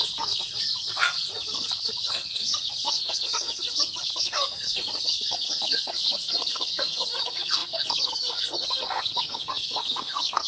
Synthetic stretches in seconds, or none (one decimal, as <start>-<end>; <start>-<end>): 0.0-10.5